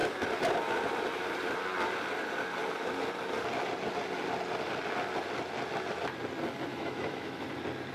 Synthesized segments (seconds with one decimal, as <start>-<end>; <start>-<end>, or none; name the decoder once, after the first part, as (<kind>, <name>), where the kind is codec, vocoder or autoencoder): 6.7-7.5 (autoencoder, DAC-VAE)